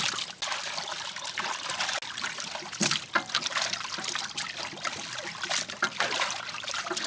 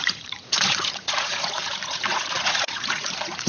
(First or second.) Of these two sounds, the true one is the first